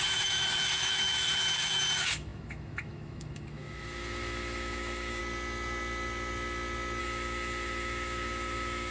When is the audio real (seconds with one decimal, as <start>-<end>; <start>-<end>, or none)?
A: 5.2-7.0